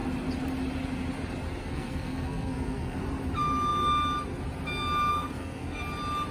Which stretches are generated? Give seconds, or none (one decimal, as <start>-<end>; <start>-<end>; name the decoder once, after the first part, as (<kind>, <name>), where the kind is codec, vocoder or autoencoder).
1.6-3.0 (codec, SNAC); 5.1-5.8